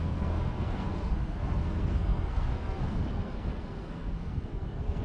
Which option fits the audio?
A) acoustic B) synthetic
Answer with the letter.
B